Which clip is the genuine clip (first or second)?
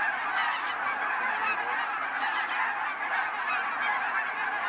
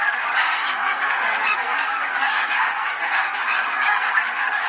first